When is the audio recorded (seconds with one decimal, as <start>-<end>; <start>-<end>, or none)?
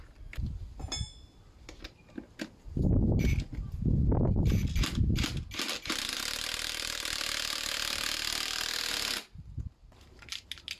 0.0-9.8; 10.4-10.8